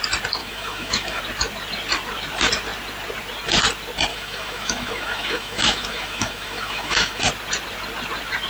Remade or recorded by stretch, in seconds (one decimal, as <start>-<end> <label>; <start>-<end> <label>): 0.0-0.4 recorded; 0.4-1.2 remade; 1.2-4.1 recorded; 4.1-7.2 remade; 7.2-8.5 recorded